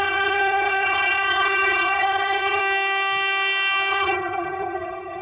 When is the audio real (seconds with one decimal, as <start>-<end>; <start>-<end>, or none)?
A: 2.6-3.9